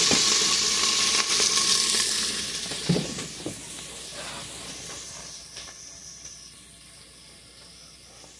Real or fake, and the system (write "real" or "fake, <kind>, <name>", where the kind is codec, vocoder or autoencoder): real